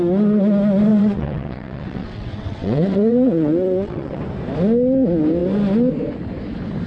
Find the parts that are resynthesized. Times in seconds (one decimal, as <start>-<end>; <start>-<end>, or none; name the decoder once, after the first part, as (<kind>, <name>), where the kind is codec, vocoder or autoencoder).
0.9-4.2 (vocoder, WaveNeXt)